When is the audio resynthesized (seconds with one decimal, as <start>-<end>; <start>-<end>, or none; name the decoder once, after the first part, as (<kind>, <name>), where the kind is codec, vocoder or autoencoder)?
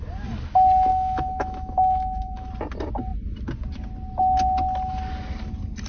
0.9-2.5 (autoencoder, DAC-VAE)